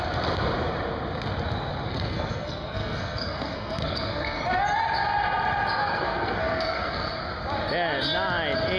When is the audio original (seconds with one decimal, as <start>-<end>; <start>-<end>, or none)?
0.0-1.9; 4.4-5.8; 7.2-8.8